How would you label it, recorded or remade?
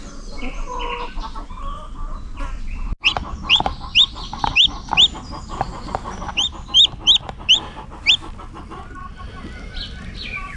recorded